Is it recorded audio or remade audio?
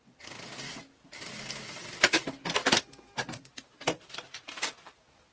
recorded